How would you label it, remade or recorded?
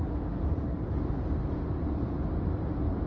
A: recorded